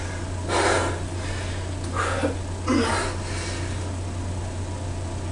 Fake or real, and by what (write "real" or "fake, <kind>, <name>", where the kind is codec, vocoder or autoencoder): real